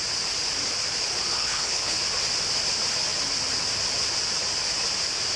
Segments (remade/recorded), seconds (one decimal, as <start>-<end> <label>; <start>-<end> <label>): 0.0-1.3 recorded; 1.3-2.0 remade; 2.0-5.4 recorded